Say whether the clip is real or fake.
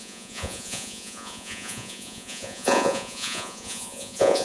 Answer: fake